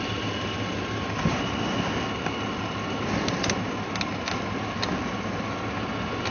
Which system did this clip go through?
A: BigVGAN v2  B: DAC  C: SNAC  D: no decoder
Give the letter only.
D